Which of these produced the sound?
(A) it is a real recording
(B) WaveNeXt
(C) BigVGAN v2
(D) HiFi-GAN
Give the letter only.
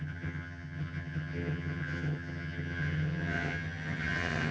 D